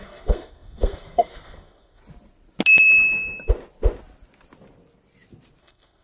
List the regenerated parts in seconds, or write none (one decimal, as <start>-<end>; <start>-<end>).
0.0-2.0; 5.6-6.0